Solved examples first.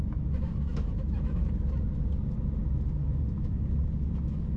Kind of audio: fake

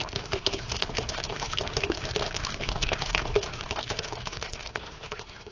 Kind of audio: fake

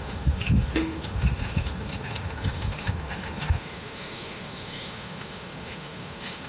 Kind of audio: fake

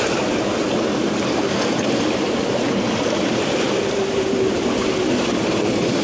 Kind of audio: real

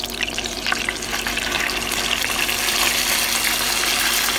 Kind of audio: real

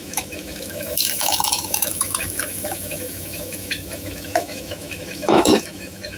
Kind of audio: fake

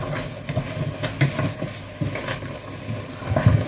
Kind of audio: real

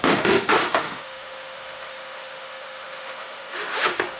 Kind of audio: fake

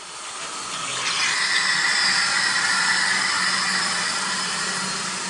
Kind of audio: real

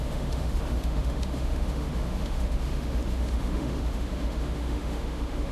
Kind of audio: fake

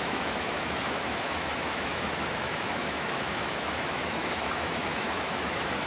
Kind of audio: fake